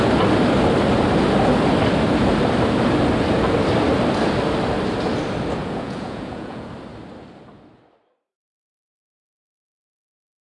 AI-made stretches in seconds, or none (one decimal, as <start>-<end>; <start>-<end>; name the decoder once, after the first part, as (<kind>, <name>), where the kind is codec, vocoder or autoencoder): 5.6-6.7 (vocoder, Vocos)